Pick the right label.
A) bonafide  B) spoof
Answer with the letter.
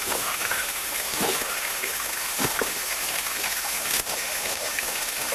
B